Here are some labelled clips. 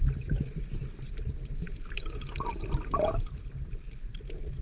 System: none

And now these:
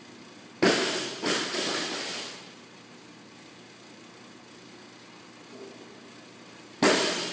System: none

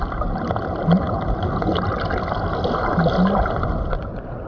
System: none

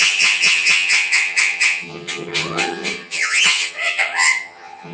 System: vocoder, HiFi-GAN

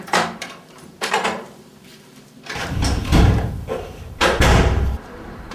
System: vocoder, BigVGAN v2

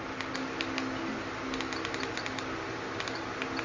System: none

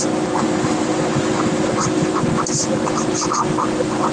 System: none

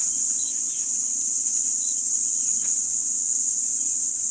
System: vocoder, WaveNeXt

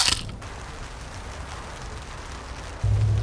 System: none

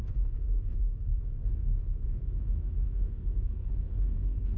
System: codec, SNAC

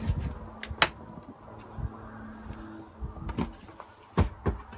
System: none